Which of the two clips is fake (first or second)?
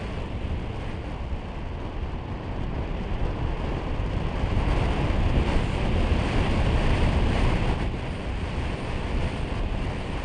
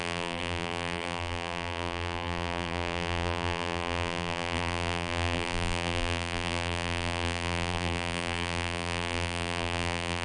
second